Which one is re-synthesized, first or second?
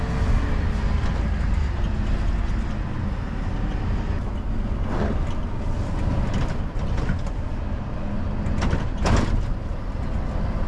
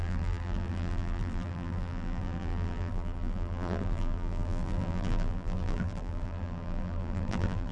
second